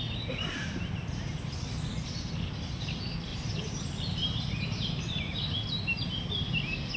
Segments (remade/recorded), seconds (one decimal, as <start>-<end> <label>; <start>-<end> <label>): 0.0-3.3 recorded; 3.3-5.4 remade; 5.4-7.0 recorded